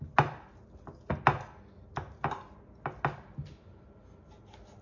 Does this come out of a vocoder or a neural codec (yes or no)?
no